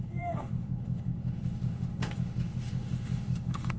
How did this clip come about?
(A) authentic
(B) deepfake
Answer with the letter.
B